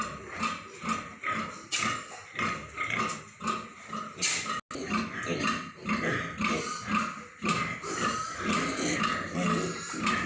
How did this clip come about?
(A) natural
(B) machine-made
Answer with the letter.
A